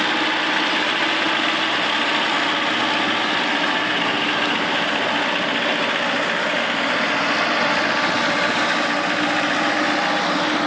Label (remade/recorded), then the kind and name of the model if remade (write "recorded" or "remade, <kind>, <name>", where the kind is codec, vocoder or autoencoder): recorded